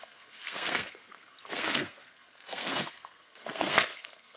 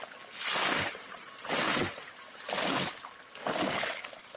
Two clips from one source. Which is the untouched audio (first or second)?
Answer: second